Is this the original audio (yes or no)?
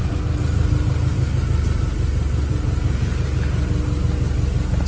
yes